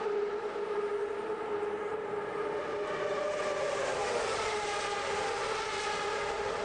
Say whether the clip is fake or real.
real